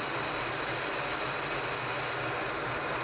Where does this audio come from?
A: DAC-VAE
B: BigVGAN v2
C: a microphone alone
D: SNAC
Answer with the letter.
C